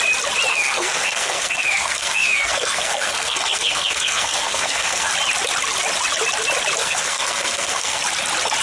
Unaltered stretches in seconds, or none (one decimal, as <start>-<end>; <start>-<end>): 0.0-0.5; 5.1-6.8; 8.0-8.6